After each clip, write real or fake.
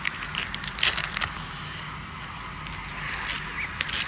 real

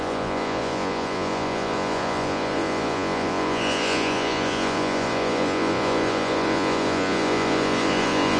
fake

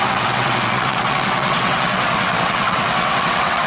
fake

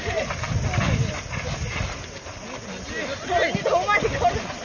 real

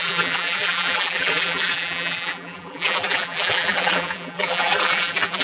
fake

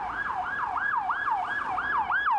real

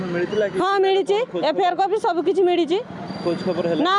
real